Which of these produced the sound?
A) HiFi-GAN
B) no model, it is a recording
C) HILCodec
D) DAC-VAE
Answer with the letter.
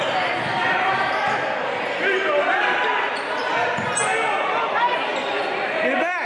B